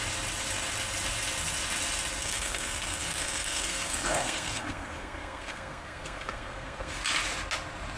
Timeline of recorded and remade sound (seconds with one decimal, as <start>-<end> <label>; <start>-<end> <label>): 0.0-2.2 recorded; 2.2-7.0 remade; 7.0-8.0 recorded